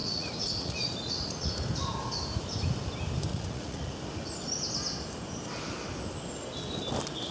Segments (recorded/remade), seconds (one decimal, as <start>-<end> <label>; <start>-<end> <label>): 0.0-1.5 remade; 1.5-3.3 recorded; 3.3-3.9 remade; 3.9-7.3 recorded